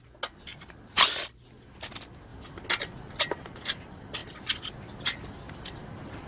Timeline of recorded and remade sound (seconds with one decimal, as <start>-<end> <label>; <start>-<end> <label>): 0.0-6.3 recorded